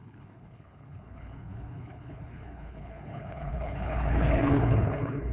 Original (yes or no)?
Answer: no